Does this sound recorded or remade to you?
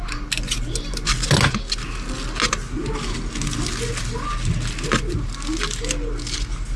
recorded